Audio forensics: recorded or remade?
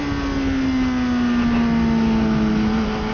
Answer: recorded